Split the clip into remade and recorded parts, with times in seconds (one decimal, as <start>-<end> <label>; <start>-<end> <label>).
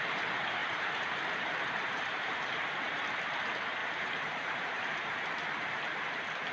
0.0-0.6 recorded; 0.6-2.4 remade; 2.4-3.8 recorded; 3.8-5.2 remade; 5.2-6.5 recorded